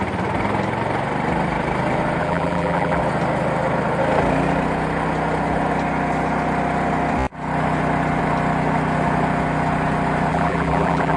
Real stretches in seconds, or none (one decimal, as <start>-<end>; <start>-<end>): 0.0-2.2; 3.0-10.3